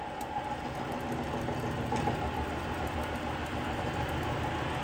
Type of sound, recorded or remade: recorded